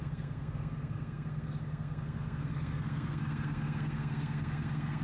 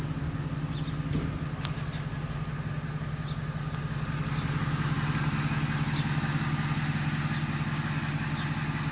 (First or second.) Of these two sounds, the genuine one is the second